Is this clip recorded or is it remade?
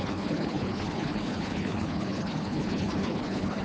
remade